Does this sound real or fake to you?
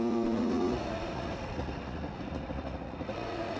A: fake